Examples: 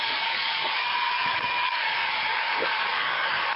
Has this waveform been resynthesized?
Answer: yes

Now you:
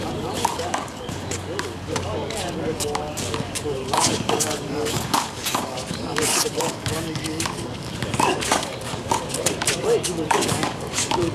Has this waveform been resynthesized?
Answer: yes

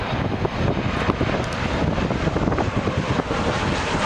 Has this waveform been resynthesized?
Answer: no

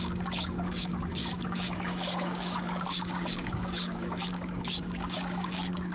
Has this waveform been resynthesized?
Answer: yes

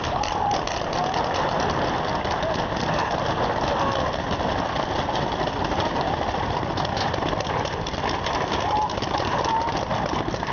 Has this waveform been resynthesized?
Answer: no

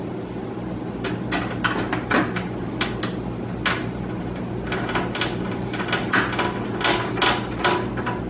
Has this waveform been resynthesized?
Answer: no